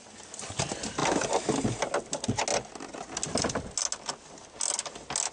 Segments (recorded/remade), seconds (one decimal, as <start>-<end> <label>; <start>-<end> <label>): 0.0-5.3 recorded